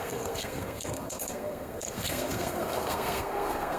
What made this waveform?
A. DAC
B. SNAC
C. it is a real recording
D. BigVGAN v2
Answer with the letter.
B